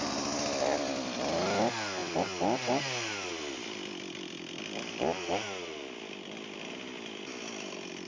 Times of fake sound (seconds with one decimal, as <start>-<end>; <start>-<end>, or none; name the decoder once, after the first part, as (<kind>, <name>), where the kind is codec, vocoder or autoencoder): none